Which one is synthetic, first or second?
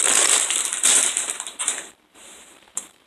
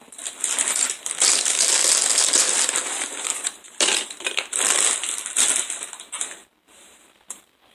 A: first